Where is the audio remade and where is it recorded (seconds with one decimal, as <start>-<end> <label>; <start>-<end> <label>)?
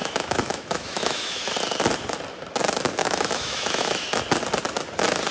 0.0-1.4 remade; 1.4-3.0 recorded; 3.0-4.2 remade; 4.2-5.3 recorded